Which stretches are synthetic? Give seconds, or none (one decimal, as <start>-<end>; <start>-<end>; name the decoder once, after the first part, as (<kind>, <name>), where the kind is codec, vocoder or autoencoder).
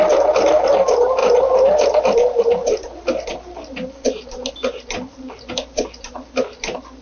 none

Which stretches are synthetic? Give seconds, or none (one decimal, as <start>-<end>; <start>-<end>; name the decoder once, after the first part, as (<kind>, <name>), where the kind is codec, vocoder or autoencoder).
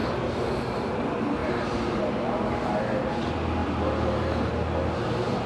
1.4-2.4 (vocoder, BigVGAN v2); 3.6-4.5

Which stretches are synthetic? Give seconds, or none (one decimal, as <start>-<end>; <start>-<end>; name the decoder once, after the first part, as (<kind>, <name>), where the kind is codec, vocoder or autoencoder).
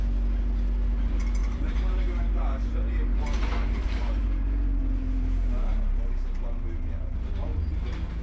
1.4-6.0 (vocoder, BigVGAN v2)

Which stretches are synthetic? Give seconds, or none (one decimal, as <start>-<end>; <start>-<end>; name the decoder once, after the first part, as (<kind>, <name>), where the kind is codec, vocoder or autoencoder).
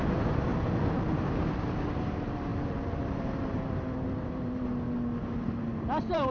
0.0-0.5 (vocoder, BigVGAN v2); 1.3-4.7; 5.2-6.3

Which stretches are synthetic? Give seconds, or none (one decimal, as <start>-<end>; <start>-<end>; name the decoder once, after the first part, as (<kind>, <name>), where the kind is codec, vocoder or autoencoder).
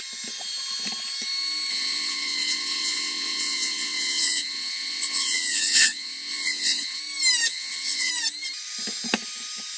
1.7-7.0 (vocoder, WaveNeXt); 7.5-8.1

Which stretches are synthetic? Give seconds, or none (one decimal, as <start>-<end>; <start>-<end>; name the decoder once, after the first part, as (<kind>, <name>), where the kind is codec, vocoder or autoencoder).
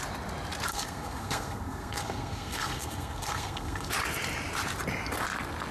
0.7-3.9 (codec, SNAC)